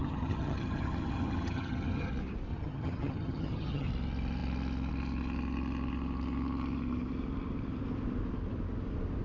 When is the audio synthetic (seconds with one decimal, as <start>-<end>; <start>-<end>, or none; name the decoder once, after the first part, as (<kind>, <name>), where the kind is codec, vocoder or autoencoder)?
0.0-2.1 (vocoder, HiFi-GAN); 2.5-3.9

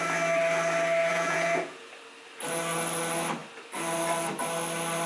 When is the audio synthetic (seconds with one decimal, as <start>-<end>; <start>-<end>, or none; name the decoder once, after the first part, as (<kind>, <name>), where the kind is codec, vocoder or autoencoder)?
1.1-1.9 (vocoder, Vocos)